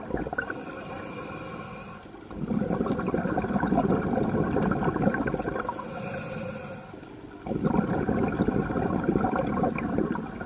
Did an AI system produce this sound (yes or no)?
no